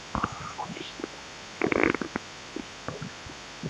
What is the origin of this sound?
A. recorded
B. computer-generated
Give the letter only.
A